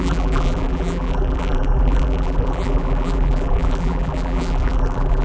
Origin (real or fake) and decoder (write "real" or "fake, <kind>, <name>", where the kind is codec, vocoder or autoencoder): fake, vocoder, BigVGAN v2